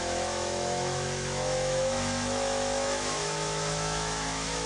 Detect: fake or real fake